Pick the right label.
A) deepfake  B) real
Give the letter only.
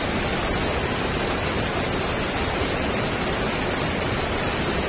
B